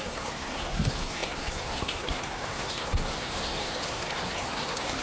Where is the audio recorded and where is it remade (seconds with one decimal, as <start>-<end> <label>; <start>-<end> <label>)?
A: 0.0-5.0 remade